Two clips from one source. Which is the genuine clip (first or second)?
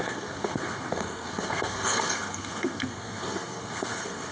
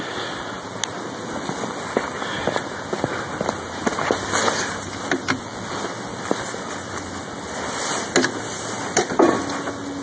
second